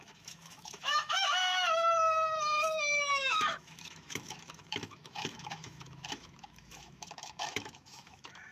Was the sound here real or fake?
fake